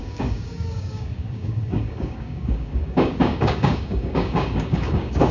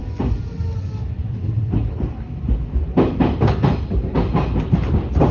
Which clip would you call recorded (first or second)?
second